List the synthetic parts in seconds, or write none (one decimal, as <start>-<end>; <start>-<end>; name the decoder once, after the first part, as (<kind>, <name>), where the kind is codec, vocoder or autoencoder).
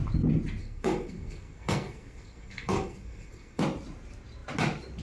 0.6-3.6 (codec, SNAC)